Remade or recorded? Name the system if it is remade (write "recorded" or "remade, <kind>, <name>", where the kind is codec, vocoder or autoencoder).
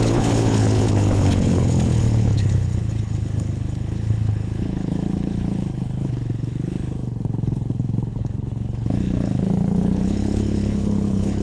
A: remade, codec, HILCodec